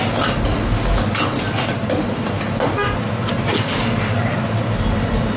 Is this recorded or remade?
recorded